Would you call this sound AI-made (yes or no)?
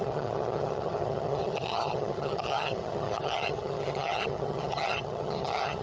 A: yes